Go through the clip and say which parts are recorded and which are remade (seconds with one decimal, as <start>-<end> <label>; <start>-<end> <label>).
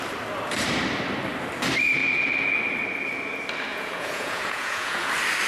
0.0-3.7 recorded; 3.7-5.1 remade; 5.1-5.5 recorded